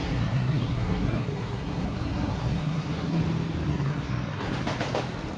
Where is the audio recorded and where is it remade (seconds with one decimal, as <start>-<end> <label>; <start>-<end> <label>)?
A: 0.0-3.2 remade; 3.2-3.7 recorded; 3.7-4.5 remade; 4.5-5.4 recorded